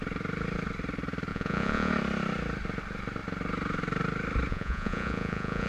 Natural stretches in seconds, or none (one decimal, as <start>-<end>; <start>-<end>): 0.0-1.3; 1.9-4.5